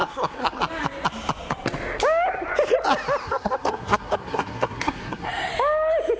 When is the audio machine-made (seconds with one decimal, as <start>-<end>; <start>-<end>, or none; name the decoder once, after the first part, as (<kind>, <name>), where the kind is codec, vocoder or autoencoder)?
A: 0.0-0.6 (codec, SNAC); 3.2-5.5